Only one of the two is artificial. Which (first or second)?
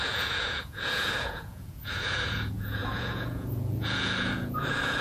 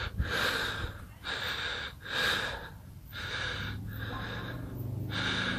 first